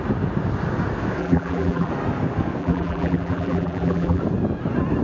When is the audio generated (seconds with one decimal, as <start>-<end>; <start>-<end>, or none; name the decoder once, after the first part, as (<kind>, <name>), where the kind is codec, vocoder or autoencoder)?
1.2-1.9 (vocoder, BigVGAN v2); 2.6-4.2